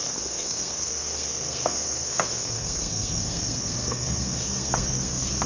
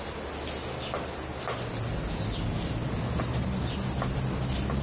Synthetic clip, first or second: first